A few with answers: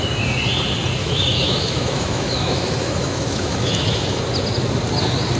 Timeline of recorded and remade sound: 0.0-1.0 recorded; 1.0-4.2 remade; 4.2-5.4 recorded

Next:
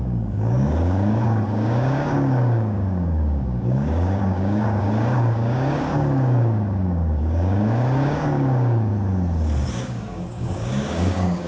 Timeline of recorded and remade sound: 0.0-8.9 remade; 8.9-9.7 recorded; 9.7-11.5 remade

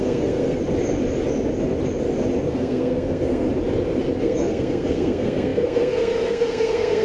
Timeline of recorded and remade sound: 0.0-0.6 remade; 0.6-2.5 recorded; 2.5-3.5 remade; 3.5-4.2 recorded; 4.2-7.0 remade